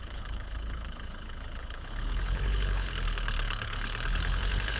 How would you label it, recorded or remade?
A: remade